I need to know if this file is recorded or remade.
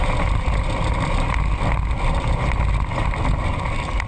recorded